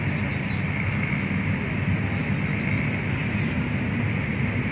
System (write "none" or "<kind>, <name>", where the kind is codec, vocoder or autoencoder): none